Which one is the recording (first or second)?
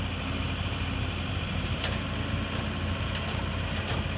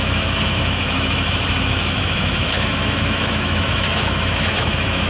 first